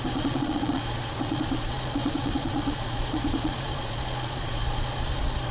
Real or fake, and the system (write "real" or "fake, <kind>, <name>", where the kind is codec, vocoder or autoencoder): fake, vocoder, Vocos